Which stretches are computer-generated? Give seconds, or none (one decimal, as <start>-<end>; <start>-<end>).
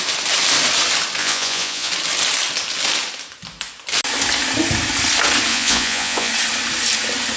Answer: 1.2-1.9; 5.5-6.3